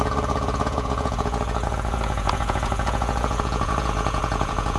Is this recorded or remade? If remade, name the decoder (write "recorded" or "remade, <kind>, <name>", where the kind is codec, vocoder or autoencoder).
remade, vocoder, Vocos